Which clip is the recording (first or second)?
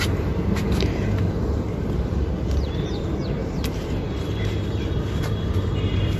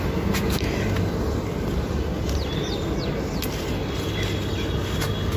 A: second